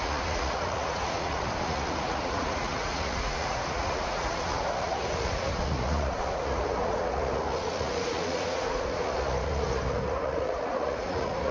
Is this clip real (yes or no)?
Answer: no